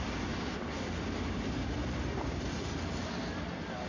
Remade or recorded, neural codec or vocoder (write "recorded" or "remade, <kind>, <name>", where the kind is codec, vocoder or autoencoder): recorded